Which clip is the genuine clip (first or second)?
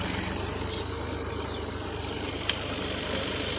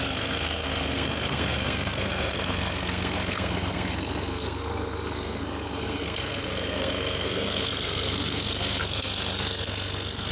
first